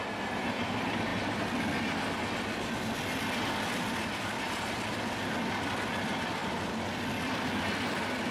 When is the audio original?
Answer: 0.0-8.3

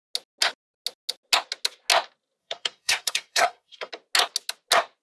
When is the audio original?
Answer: 0.0-2.4; 3.9-5.0

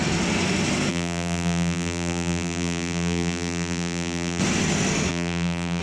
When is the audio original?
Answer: 0.0-0.9; 4.4-5.1

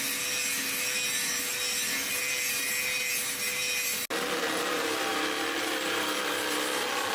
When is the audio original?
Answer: 0.0-7.1

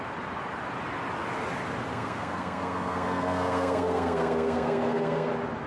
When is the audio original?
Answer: 0.0-1.9; 5.3-5.7

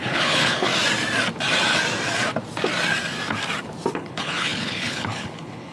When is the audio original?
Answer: 0.7-3.9

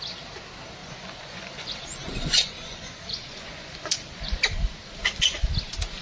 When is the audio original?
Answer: 0.0-0.8; 4.4-6.0